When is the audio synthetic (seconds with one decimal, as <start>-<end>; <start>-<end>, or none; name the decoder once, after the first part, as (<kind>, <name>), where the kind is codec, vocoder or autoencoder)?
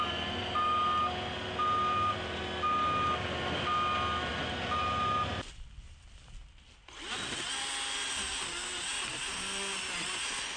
none